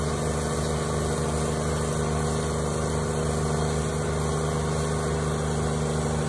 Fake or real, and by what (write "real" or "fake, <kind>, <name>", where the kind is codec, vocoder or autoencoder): real